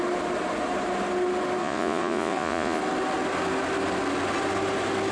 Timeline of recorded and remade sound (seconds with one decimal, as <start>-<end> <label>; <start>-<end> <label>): 0.0-1.6 recorded; 1.6-2.8 remade; 2.8-5.1 recorded